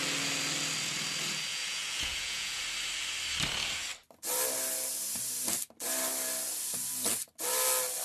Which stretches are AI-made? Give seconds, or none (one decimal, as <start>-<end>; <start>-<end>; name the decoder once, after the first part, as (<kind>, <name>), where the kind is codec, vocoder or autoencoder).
1.5-2.6 (vocoder, Vocos)

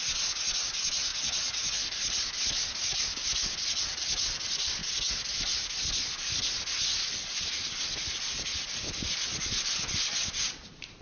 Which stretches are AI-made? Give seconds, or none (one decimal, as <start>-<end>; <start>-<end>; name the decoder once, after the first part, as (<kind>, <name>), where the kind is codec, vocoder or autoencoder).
1.1-1.8 (vocoder, Vocos)

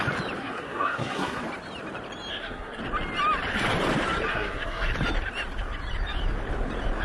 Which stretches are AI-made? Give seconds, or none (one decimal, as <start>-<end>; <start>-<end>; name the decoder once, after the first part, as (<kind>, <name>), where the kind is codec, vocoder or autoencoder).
0.4-1.4 (codec, SNAC); 2.3-2.8; 4.3-4.9

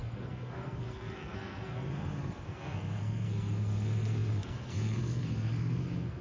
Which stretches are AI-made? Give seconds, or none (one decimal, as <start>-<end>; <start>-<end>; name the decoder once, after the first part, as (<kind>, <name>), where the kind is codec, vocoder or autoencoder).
0.0-6.2 (codec, SNAC)

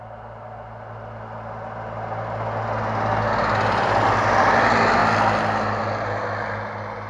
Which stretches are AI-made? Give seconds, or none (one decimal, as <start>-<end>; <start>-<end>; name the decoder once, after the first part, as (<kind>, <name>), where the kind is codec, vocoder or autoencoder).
none

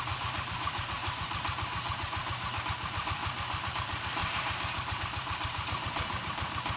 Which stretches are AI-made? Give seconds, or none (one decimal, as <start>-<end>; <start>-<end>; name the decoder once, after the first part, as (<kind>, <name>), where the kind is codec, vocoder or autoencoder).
0.0-1.0 (vocoder, BigVGAN v2); 2.6-3.2; 3.7-6.8